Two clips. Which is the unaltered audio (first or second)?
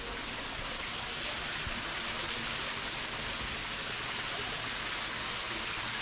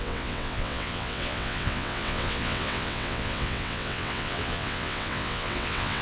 first